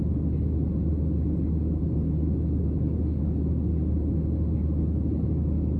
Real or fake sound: real